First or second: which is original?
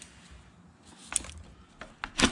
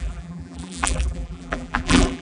first